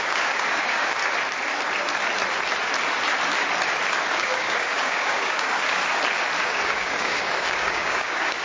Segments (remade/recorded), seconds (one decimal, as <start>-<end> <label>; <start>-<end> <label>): 0.0-1.0 remade; 1.0-4.1 recorded; 4.1-5.8 remade; 5.8-6.4 recorded; 6.4-8.4 remade